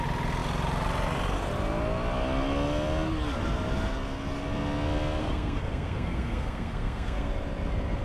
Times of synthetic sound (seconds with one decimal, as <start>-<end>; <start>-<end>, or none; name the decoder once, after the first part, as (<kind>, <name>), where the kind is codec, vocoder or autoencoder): 5.2-7.3 (codec, SNAC)